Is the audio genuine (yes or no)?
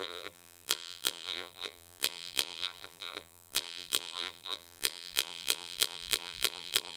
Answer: no